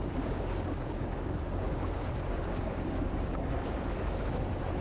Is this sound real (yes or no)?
no